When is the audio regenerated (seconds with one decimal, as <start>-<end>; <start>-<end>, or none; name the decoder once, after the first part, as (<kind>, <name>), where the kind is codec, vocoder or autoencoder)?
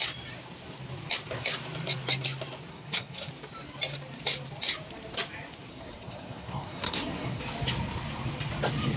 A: 2.7-3.3 (codec, SNAC); 5.7-7.4